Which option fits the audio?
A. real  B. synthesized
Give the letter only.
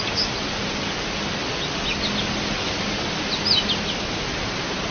A